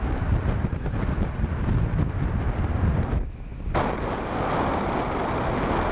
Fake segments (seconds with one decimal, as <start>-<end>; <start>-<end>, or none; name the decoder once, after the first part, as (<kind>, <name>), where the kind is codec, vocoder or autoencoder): none